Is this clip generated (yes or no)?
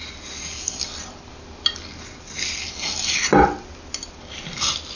no